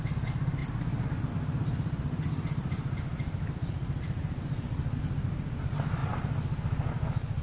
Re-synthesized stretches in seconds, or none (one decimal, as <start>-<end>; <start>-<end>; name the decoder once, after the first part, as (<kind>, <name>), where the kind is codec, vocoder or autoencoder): none